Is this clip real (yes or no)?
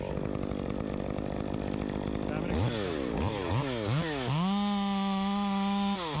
yes